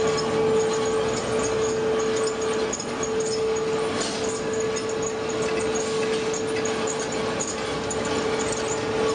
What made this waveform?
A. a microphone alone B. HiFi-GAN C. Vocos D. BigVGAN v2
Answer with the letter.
A